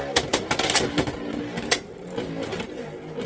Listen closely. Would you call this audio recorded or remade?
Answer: recorded